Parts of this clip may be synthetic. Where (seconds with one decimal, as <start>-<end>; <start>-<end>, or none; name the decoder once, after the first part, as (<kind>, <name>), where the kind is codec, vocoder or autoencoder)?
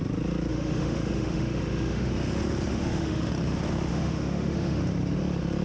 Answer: 0.5-2.1 (autoencoder, DAC-VAE); 2.7-3.3; 3.9-4.8